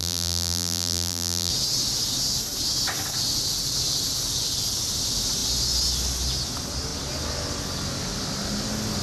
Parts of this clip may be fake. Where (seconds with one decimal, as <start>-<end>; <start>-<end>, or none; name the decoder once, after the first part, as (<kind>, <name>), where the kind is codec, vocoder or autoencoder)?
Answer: 0.0-1.5 (vocoder, BigVGAN v2)